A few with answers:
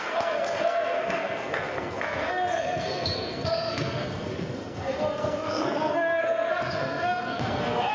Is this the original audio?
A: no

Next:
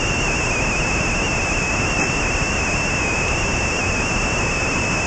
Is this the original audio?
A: yes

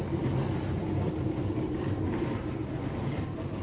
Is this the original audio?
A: yes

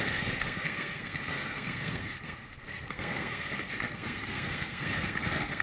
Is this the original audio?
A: no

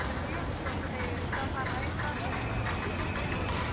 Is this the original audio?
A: yes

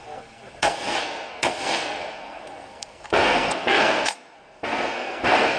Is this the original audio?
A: no